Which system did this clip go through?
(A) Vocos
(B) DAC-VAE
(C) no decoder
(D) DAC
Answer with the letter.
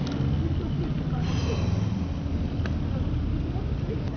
C